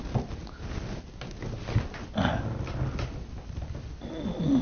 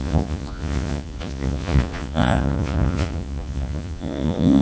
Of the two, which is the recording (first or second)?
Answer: first